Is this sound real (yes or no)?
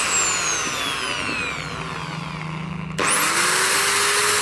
yes